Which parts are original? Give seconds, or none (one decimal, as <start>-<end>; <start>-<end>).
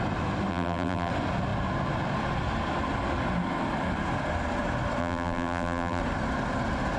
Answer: 0.0-0.5; 1.1-5.0; 6.0-7.0